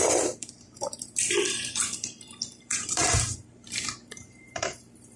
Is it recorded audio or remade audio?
remade